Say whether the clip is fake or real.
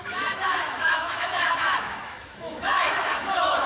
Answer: fake